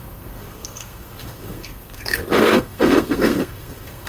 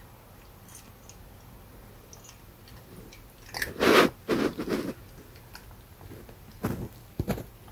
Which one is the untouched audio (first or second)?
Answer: second